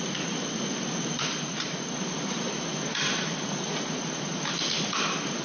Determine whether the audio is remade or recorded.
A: remade